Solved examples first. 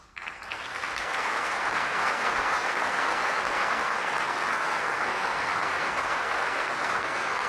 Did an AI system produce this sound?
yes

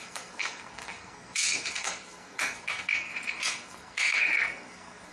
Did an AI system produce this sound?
yes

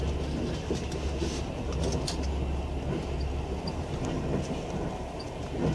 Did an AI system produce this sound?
no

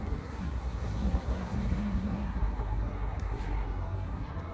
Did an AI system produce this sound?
yes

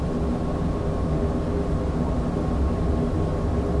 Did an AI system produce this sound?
no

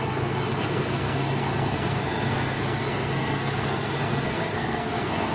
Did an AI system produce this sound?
yes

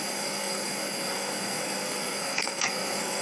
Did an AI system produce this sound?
yes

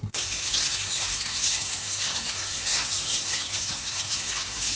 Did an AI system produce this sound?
yes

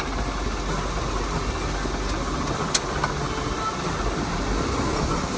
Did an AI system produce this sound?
no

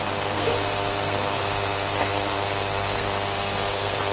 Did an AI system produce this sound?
yes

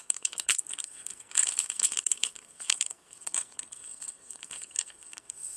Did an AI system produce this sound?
yes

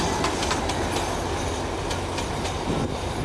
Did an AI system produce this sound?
no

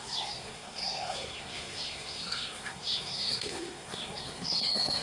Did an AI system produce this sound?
yes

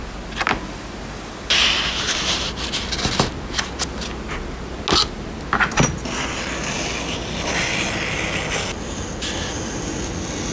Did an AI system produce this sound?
no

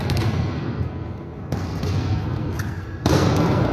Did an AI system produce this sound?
yes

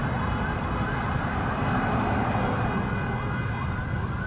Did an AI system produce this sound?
no